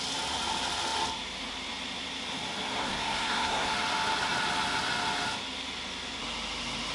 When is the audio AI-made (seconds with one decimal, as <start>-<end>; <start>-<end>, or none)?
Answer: 2.8-3.7